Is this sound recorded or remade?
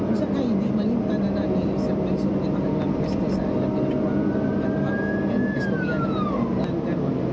recorded